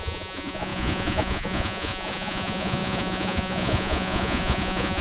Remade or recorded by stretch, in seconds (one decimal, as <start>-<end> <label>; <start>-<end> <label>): 0.0-5.0 remade